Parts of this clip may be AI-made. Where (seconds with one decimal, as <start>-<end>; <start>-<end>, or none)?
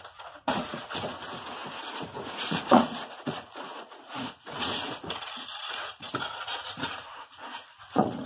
0.0-8.3